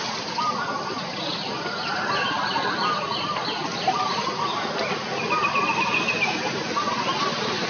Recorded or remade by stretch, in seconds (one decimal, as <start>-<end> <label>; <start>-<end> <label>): 0.0-7.7 recorded